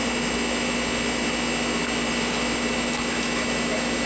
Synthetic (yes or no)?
no